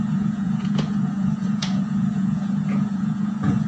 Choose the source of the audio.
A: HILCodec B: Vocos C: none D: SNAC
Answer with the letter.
B